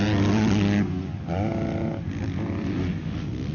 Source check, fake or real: real